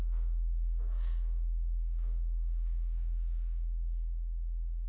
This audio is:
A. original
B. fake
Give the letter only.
B